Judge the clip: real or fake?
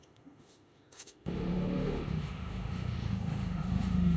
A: fake